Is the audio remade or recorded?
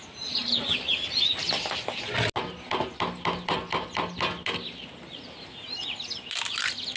recorded